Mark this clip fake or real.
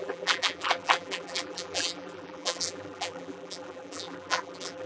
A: fake